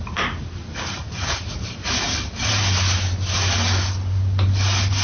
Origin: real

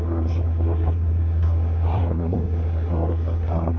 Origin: fake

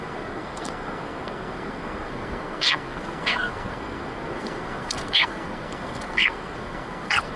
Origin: fake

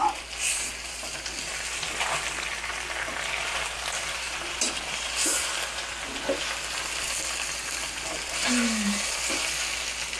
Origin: real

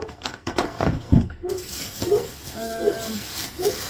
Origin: fake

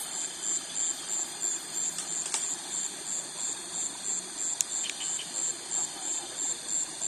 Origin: real